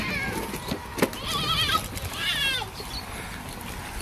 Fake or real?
real